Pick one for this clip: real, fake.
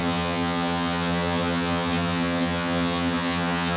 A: fake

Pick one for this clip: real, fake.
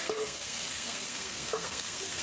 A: fake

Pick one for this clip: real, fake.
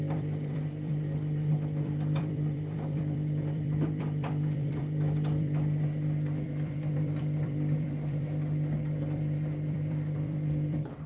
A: fake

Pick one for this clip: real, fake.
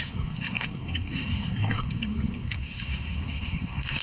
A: fake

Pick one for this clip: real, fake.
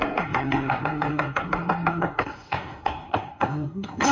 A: fake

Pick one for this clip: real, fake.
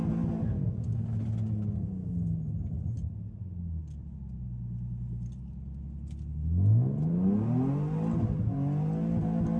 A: real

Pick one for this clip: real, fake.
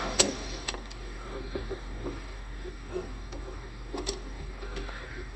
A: fake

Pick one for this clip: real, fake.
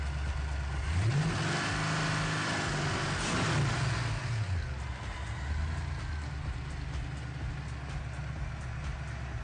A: real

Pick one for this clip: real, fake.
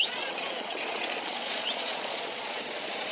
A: fake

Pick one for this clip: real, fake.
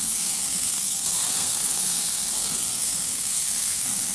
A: fake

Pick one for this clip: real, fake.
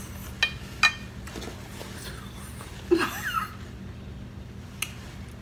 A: real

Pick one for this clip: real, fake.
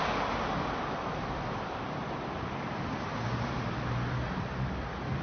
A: real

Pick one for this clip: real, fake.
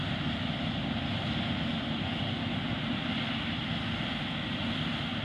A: real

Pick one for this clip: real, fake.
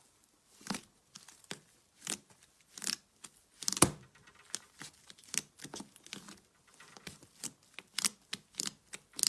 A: real